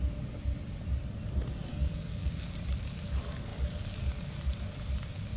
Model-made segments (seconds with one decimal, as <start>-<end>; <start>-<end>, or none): 1.7-2.3